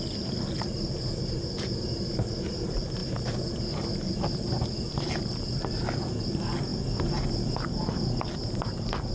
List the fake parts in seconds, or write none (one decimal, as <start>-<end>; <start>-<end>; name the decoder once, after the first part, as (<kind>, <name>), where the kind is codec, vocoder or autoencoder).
none